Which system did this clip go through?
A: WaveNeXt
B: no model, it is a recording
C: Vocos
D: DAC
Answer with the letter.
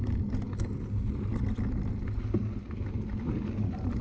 B